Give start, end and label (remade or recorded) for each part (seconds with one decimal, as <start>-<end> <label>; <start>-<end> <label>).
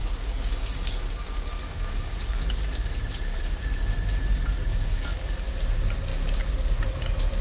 0.0-3.4 remade; 3.4-4.7 recorded; 4.7-5.5 remade; 5.5-7.4 recorded